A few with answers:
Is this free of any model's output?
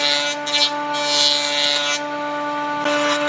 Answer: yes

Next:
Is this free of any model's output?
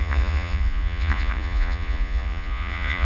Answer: no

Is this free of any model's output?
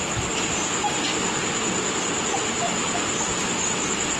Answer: yes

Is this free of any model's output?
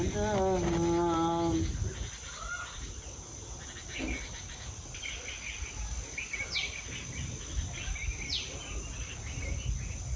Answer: yes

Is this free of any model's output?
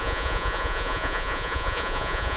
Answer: no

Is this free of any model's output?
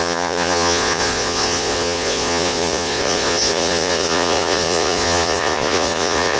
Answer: no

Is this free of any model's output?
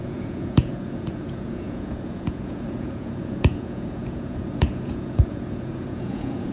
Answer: no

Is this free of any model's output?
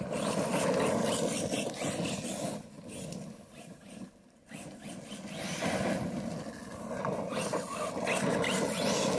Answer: yes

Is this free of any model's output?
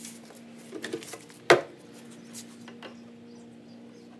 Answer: yes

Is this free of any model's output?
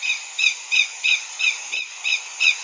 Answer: no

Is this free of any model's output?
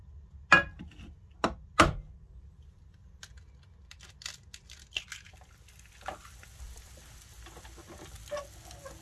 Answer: yes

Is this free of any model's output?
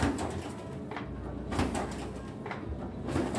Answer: yes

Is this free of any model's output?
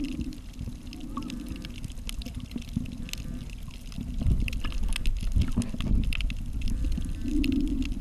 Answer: yes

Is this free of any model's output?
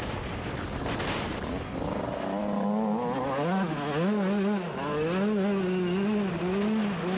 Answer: yes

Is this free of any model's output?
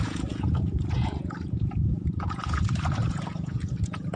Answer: no